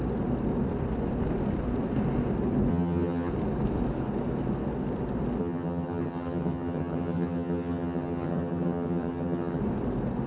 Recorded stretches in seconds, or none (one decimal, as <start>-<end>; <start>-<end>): 0.0-2.7; 3.3-5.4; 9.6-10.3